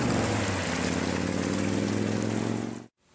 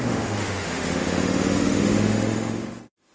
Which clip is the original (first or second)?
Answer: first